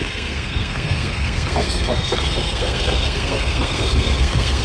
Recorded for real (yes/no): no